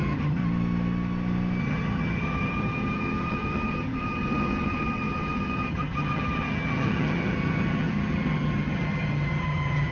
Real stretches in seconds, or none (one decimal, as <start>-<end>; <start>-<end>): 0.4-1.6